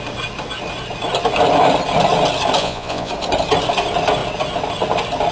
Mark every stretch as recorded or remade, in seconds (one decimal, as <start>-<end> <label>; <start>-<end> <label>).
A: 0.0-2.6 recorded; 2.6-3.1 remade; 3.1-5.3 recorded